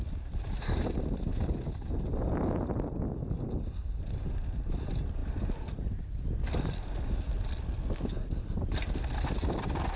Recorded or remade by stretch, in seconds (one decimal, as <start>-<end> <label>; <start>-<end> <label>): 0.0-10.0 recorded